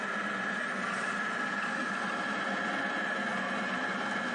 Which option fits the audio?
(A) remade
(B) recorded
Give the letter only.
B